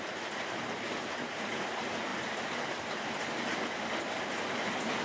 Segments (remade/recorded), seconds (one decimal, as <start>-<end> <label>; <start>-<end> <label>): 0.0-5.0 recorded